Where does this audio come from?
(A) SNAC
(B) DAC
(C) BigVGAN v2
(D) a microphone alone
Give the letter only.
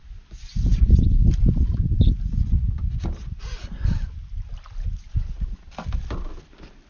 D